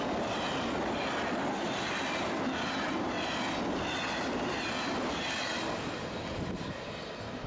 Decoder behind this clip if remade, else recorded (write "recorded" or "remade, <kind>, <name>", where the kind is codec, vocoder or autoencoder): recorded